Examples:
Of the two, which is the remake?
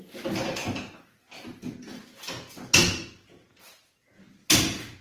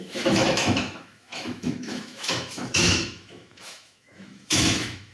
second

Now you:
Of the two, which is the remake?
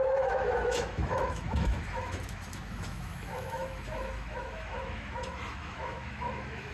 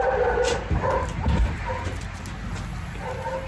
first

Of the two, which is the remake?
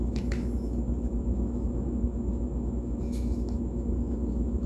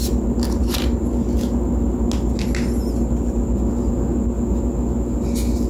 first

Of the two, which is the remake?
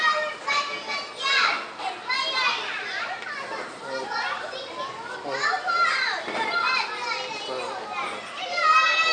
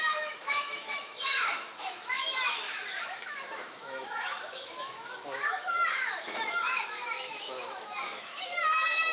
second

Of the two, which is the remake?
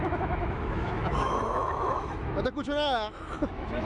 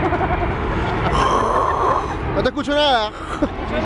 first